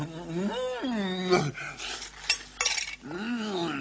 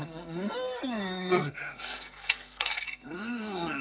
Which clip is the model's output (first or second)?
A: second